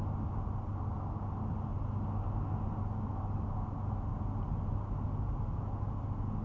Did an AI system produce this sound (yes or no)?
no